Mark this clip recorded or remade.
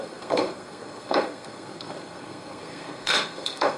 remade